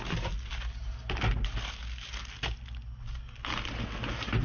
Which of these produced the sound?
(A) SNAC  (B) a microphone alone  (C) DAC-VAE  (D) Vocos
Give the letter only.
B